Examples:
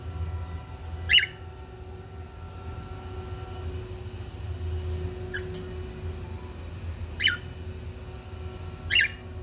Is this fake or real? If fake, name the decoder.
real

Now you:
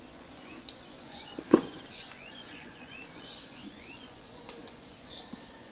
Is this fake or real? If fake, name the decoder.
fake, vocoder, Vocos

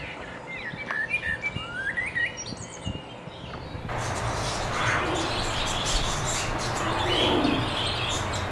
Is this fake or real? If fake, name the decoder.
real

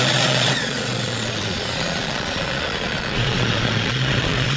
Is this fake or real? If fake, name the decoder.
fake, vocoder, Vocos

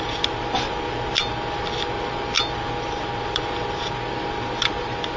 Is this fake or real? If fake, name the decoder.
real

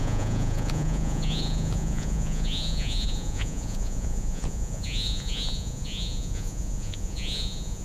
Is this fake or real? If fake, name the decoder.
fake, vocoder, Vocos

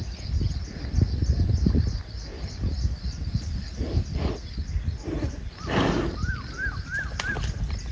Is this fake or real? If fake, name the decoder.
real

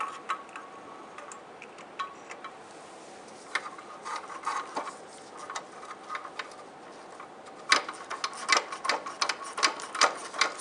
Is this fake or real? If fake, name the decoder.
real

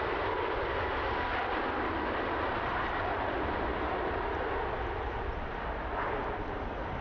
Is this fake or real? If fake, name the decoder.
real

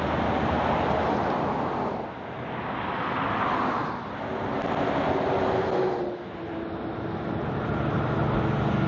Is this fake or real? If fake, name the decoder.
real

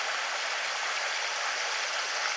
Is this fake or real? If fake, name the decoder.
real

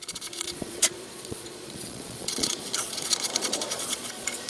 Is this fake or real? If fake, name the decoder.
fake, vocoder, Vocos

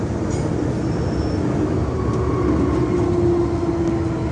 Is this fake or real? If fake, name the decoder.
real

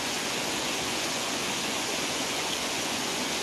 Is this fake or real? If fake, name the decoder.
fake, vocoder, Vocos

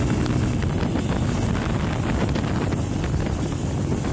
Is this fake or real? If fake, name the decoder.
real